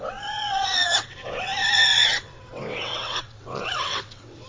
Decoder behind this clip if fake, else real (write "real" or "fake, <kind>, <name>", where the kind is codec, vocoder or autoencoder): fake, vocoder, WaveNeXt